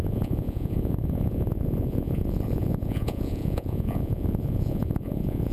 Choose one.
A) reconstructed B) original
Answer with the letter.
A